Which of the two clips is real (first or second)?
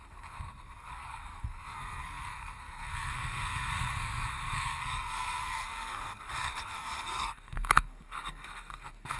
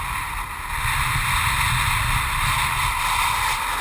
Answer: second